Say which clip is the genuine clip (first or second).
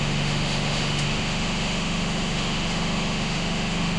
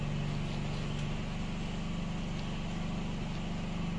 second